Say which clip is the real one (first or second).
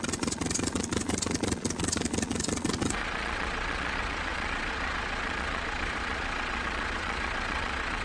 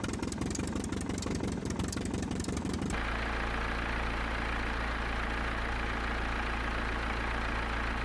second